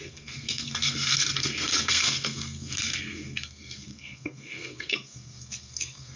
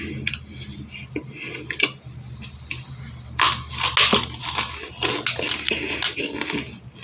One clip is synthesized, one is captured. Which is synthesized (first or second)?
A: first